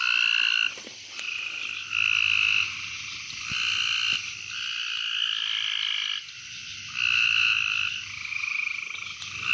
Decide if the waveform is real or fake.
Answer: real